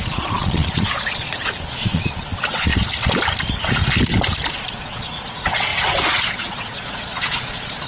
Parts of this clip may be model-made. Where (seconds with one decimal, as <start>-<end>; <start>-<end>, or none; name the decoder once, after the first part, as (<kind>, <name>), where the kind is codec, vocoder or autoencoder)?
0.0-2.7 (vocoder, Vocos); 4.5-7.9